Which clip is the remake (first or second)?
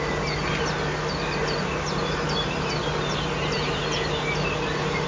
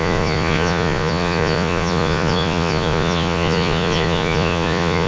second